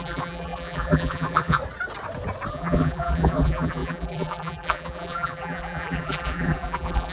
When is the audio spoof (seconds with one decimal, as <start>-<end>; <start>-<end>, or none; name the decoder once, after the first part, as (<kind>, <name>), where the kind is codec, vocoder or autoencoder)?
0.0-1.6 (vocoder, BigVGAN v2); 2.5-7.1